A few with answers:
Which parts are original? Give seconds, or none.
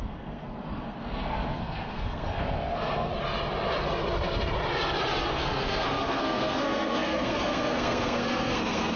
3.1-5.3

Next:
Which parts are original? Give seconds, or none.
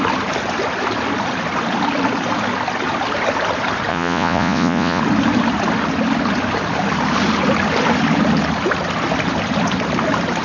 0.0-3.9; 5.0-10.4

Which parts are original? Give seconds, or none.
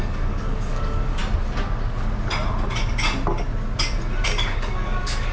1.2-4.4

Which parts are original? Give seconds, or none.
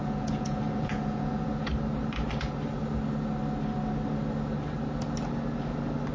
1.7-6.1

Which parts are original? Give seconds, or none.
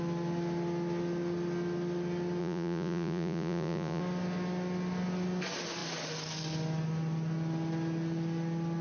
0.0-2.4; 4.0-8.8